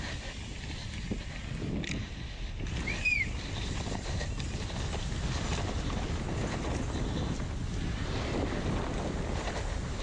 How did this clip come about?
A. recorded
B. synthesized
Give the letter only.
A